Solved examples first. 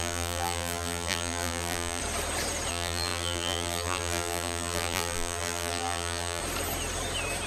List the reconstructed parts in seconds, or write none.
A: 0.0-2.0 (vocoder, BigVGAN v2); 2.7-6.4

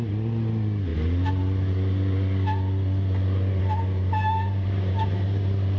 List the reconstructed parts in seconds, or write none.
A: 0.0-0.9 (vocoder, BigVGAN v2); 3.6-5.8

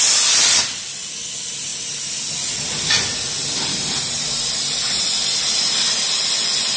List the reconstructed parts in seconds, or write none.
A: none

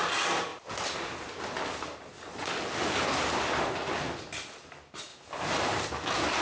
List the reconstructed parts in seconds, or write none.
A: none

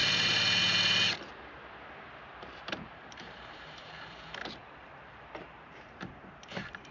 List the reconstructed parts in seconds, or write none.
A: 2.4-6.9 (vocoder, BigVGAN v2)

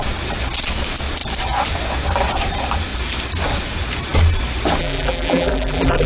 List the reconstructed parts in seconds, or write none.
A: 4.8-6.1 (vocoder, BigVGAN v2)

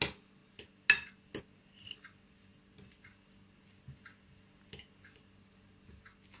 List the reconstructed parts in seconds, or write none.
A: none

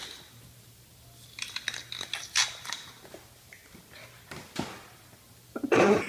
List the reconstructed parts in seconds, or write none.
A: 2.3-3.6 (vocoder, BigVGAN v2)